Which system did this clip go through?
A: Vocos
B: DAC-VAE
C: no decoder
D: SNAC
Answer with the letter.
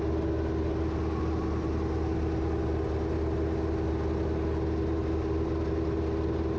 C